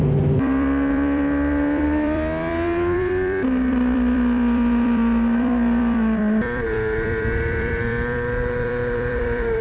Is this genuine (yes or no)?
no